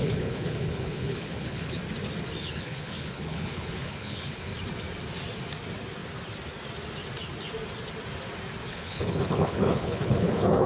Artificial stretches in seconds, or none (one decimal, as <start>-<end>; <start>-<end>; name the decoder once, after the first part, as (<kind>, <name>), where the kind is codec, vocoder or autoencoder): 0.0-1.8 (codec, HILCodec); 2.4-4.5; 8.7-10.7